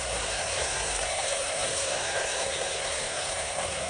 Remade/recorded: remade